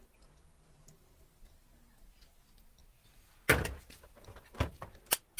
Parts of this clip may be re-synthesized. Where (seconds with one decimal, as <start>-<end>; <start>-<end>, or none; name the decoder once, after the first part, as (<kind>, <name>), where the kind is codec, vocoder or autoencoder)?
none

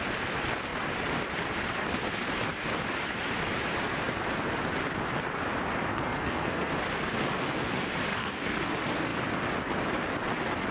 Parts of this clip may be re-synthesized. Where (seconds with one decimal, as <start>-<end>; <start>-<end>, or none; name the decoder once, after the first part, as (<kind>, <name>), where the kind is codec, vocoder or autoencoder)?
5.9-6.7 (codec, SNAC); 8.1-8.7

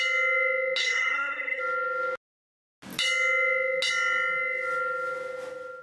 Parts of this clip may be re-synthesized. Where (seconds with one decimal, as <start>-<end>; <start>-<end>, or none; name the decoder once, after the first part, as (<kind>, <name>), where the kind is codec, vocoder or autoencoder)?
0.8-1.6 (codec, SNAC)

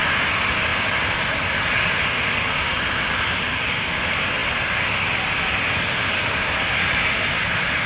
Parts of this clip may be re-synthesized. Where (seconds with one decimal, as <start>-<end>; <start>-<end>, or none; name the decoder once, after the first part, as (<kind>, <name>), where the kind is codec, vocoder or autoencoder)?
none

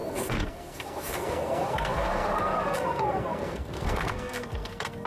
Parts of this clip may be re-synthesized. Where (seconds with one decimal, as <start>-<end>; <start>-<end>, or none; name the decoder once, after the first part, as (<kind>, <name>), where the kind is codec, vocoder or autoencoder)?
0.0-5.1 (codec, SNAC)

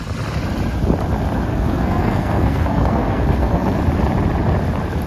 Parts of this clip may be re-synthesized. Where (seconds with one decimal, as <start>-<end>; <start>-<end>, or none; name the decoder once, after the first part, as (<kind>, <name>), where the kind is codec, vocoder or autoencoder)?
1.5-3.8 (codec, SNAC)

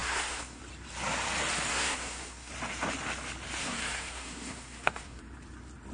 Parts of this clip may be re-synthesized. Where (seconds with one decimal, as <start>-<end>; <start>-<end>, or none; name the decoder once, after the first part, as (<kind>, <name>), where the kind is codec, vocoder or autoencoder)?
0.0-0.6 (codec, SNAC); 1.7-2.5; 3.6-5.2